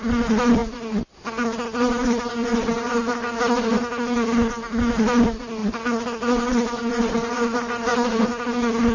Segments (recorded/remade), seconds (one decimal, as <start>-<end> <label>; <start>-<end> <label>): 0.0-5.6 recorded; 5.6-6.8 remade; 6.8-7.9 recorded; 7.9-8.5 remade; 8.5-8.9 recorded